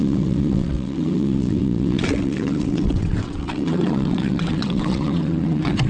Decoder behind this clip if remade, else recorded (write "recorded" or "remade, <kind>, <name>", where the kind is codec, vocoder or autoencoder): remade, vocoder, WaveNeXt